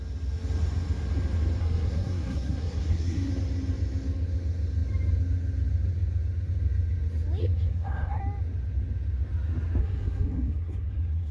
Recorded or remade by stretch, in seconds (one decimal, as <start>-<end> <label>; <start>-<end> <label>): 0.0-1.6 recorded; 1.6-3.3 remade; 3.3-7.4 recorded; 7.4-8.2 remade; 8.2-9.8 recorded; 9.8-11.3 remade